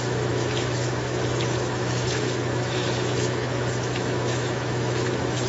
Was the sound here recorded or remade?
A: remade